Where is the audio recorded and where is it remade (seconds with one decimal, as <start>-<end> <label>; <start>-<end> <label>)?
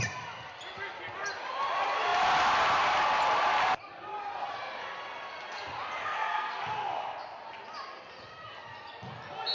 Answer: 0.0-6.0 recorded; 6.0-6.6 remade; 6.6-9.5 recorded